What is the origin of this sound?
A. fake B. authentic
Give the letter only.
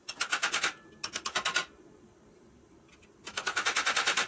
B